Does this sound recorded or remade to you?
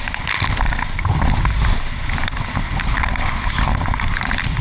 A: remade